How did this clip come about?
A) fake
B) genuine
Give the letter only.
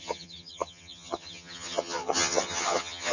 A